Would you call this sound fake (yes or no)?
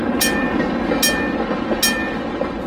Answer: no